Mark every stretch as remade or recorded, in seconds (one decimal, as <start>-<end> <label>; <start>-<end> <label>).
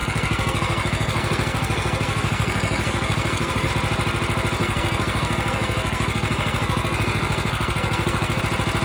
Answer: 0.0-3.7 remade; 3.7-4.6 recorded; 4.6-8.4 remade; 8.4-8.8 recorded